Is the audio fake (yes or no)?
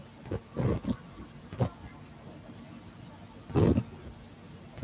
no